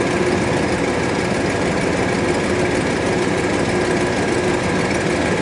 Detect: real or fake real